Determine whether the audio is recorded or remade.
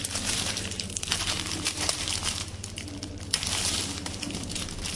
remade